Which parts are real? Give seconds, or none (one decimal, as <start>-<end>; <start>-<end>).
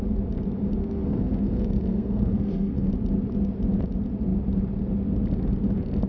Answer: 0.0-0.8; 2.9-6.1